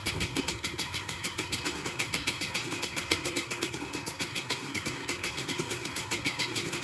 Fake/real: fake